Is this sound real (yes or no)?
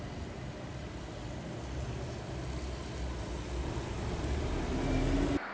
yes